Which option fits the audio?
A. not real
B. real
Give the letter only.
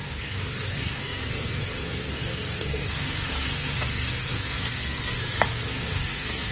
A